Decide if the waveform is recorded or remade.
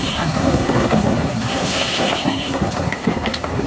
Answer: remade